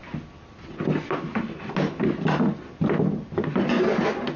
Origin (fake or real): real